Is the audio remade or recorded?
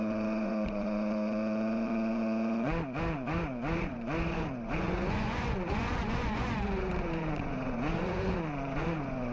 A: remade